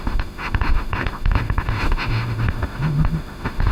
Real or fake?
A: fake